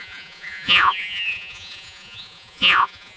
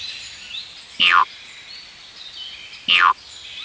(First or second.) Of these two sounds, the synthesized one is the first